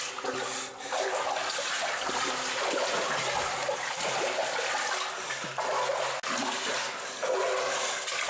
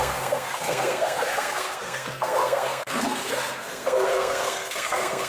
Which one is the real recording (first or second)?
first